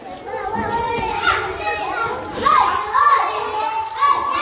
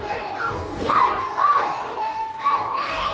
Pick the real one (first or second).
first